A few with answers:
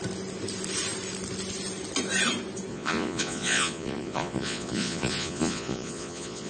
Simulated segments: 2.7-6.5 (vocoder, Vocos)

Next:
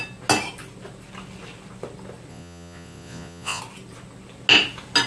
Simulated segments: 2.3-3.6 (vocoder, Vocos)